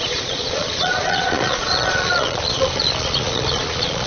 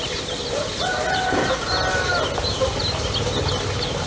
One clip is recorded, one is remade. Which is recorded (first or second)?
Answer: second